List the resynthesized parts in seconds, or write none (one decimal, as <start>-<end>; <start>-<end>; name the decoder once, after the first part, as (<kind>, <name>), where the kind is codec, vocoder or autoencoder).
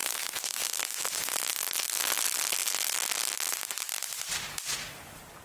0.0-1.1 (codec, SNAC)